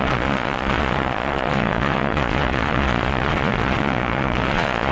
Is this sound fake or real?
fake